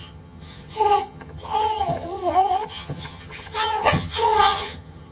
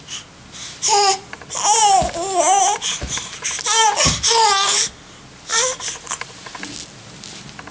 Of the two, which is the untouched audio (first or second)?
second